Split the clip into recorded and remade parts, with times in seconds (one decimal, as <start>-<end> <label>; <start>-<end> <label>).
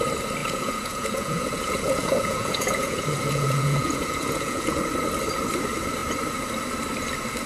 0.0-0.4 recorded; 0.4-4.8 remade; 4.8-7.5 recorded